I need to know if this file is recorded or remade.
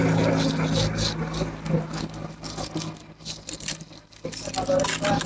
recorded